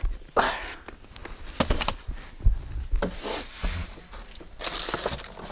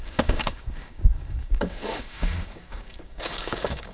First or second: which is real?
first